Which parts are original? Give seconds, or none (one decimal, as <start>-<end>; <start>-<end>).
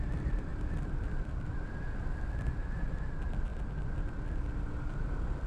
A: 0.0-5.5